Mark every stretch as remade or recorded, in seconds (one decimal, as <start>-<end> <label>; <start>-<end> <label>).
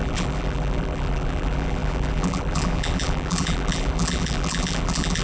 0.0-5.2 remade